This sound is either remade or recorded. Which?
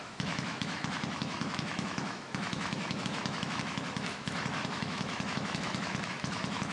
remade